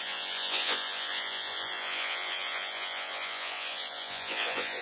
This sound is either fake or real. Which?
fake